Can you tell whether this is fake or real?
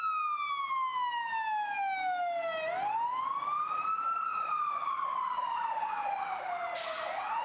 real